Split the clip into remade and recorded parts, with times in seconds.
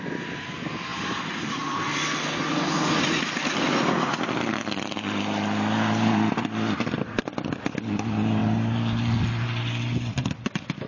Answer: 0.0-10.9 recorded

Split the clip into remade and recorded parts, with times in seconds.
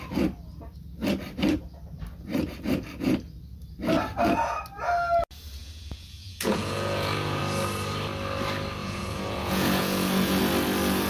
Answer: 0.0-5.6 recorded; 5.6-7.4 remade; 7.4-8.8 recorded; 8.8-10.4 remade; 10.4-11.1 recorded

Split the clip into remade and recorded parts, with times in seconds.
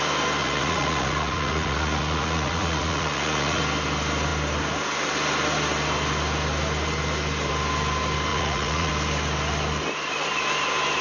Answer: 0.0-0.4 recorded; 0.4-3.6 remade; 3.6-8.3 recorded; 8.3-8.9 remade; 8.9-11.0 recorded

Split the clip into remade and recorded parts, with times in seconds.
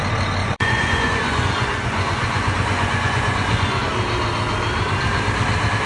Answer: 0.0-0.4 recorded; 0.4-3.9 remade; 3.9-5.9 recorded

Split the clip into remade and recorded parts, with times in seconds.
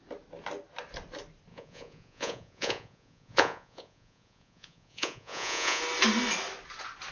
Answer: 0.0-1.5 recorded; 1.5-5.8 remade; 5.8-7.1 recorded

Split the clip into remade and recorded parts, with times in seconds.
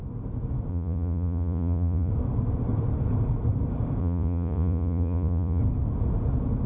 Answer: 0.0-0.7 recorded; 0.7-2.1 remade; 2.1-4.0 recorded; 4.0-5.6 remade; 5.6-6.7 recorded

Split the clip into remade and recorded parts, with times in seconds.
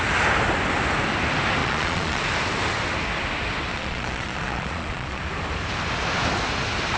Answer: 0.0-1.6 recorded; 1.6-2.2 remade; 2.2-3.7 recorded; 3.7-5.2 remade; 5.2-7.0 recorded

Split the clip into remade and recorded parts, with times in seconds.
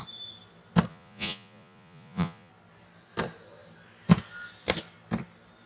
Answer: 0.0-0.9 recorded; 0.9-2.5 remade; 2.5-5.7 recorded